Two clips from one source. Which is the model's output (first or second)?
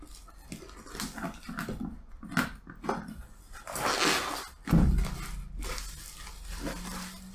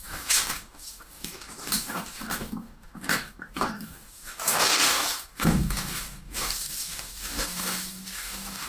second